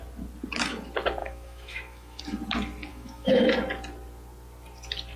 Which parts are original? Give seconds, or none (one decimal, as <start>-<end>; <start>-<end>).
0.0-1.2; 2.2-2.9; 3.5-5.2